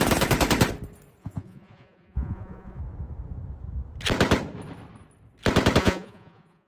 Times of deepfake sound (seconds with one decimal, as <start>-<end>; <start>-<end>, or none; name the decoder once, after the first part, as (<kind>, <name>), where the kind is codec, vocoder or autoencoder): 1.2-2.8 (vocoder, Vocos); 5.8-6.7